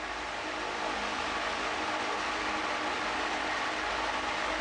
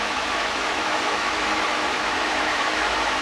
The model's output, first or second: second